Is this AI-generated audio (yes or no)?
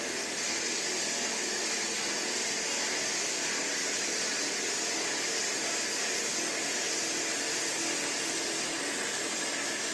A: no